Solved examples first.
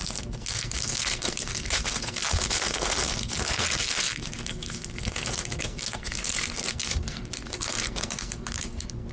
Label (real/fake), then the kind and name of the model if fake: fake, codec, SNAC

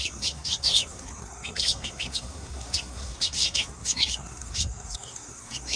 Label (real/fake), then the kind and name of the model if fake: fake, codec, SNAC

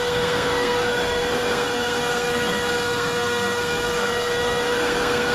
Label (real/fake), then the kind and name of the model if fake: fake, codec, SNAC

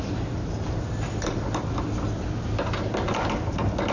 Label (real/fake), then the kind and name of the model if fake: real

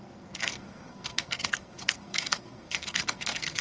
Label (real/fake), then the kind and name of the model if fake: fake, codec, SNAC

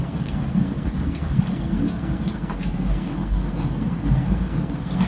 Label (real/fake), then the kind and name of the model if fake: fake, codec, SNAC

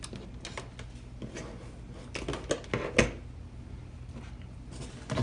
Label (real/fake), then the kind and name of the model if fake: real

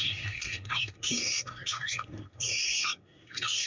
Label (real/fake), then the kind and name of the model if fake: fake, codec, SNAC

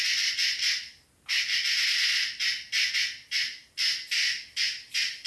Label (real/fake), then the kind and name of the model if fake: real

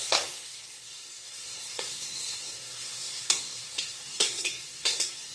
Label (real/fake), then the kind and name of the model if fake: fake, codec, SNAC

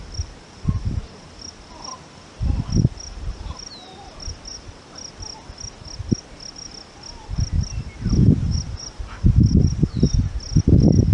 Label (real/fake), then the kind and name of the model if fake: real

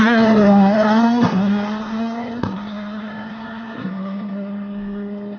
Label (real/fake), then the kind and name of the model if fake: fake, codec, SNAC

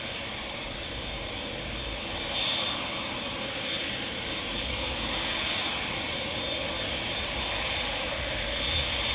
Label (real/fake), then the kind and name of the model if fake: real